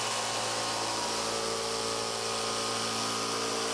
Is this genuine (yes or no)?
yes